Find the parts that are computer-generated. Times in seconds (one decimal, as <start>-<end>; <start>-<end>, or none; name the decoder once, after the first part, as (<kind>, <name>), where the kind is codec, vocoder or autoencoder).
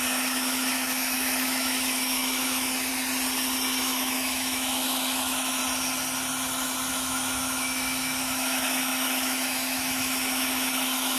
0.0-2.9 (autoencoder, DAC-VAE); 3.8-5.6; 6.9-11.2